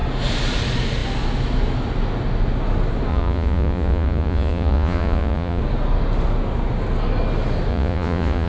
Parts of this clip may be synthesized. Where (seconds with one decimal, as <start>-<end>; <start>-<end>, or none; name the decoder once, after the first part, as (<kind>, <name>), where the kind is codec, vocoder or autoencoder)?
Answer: 3.1-5.6 (vocoder, Vocos); 7.7-8.5